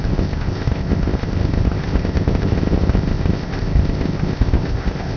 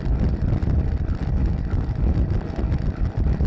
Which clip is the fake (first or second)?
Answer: first